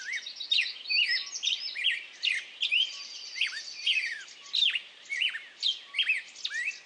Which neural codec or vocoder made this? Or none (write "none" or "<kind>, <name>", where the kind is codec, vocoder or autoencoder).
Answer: none